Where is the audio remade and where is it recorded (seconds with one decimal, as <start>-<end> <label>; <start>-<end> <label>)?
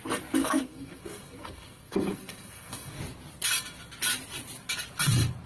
0.0-0.4 recorded; 0.4-3.0 remade; 3.0-5.5 recorded